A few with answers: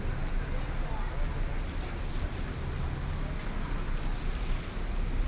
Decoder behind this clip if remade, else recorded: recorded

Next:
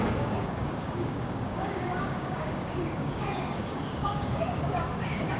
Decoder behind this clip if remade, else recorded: remade, codec, DAC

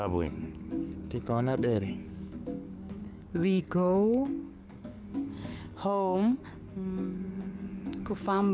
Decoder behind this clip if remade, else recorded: remade, codec, DAC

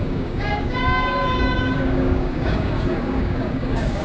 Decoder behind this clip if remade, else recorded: remade, codec, DAC